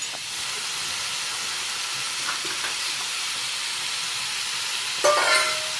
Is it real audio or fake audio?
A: real